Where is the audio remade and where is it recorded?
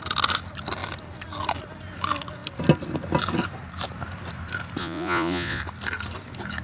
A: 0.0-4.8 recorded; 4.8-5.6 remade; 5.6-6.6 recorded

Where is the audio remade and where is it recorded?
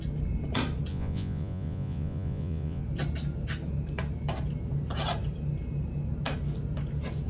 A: 0.0-0.9 recorded; 0.9-2.8 remade; 2.8-7.3 recorded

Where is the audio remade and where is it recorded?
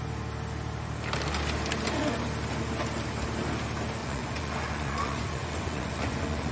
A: 0.0-4.0 recorded; 4.0-6.5 remade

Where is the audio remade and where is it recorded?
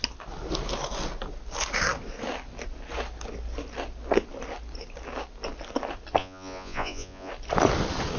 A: 0.0-6.2 recorded; 6.2-7.3 remade; 7.3-8.2 recorded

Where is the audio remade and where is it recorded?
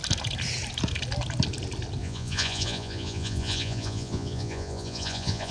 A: 0.0-2.0 recorded; 2.0-5.5 remade